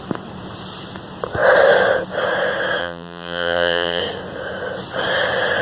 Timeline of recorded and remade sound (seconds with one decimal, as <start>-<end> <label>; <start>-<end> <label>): 0.0-2.8 recorded; 2.8-4.0 remade; 4.0-5.6 recorded